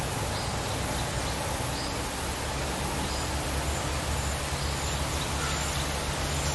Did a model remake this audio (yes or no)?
no